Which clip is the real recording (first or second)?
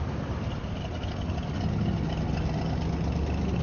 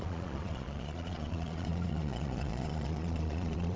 first